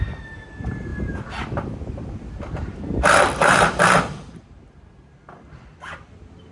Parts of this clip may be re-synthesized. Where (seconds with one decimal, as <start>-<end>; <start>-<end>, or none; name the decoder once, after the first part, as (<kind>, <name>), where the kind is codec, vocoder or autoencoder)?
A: none